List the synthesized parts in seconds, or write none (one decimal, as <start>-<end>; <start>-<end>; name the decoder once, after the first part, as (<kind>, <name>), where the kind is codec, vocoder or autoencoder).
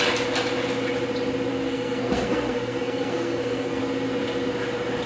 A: 1.5-3.8 (codec, SNAC)